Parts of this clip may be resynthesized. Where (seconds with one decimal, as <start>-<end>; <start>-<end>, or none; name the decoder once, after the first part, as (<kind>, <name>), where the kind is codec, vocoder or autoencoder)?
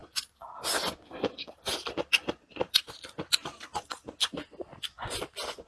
none